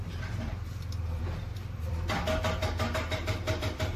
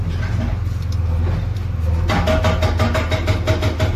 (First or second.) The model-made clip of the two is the first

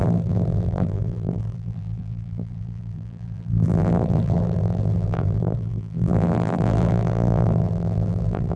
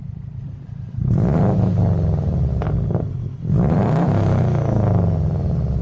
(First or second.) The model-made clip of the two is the first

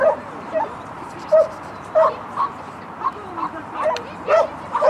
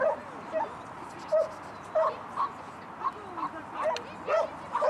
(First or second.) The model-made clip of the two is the first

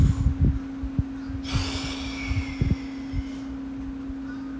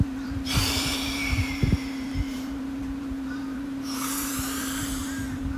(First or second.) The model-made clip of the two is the second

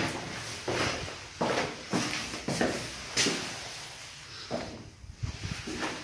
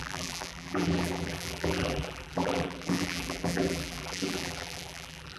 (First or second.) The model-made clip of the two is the second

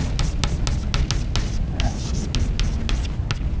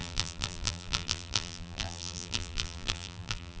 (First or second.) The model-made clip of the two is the second